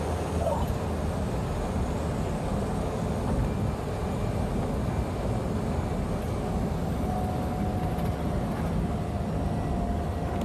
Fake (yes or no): no